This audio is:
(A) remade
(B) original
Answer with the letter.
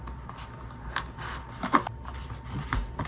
B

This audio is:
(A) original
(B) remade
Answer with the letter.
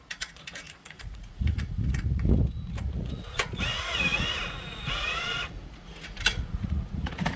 B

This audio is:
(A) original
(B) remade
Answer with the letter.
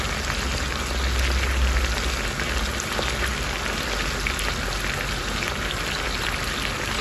A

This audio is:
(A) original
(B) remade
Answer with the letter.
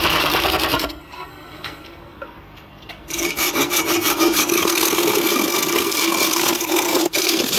B